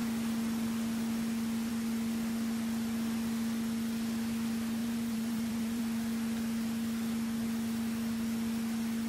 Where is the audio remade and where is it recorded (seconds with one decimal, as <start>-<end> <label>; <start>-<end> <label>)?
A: 0.0-4.8 recorded; 4.8-5.8 remade; 5.8-9.1 recorded